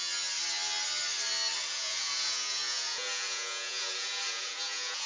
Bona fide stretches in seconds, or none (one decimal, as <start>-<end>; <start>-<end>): 0.0-1.7